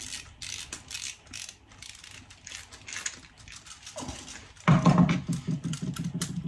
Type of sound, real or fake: real